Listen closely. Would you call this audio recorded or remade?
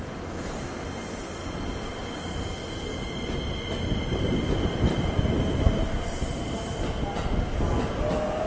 recorded